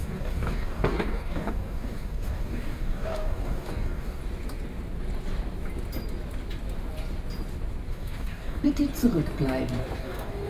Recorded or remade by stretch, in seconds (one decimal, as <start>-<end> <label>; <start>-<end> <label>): 0.0-4.2 remade; 4.2-7.9 recorded; 7.9-8.6 remade; 8.6-10.0 recorded; 10.0-10.5 remade

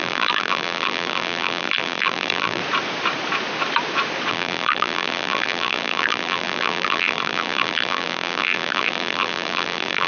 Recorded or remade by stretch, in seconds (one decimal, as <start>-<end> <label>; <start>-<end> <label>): 0.0-2.6 remade; 2.6-4.3 recorded; 4.3-10.1 remade